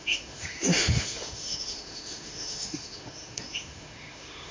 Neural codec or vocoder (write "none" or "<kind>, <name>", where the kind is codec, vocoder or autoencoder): autoencoder, DAC-VAE